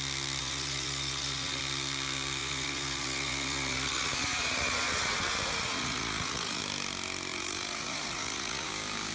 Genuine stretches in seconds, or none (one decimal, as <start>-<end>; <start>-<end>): 0.0-0.4; 1.6-2.4; 6.6-7.3; 8.7-9.1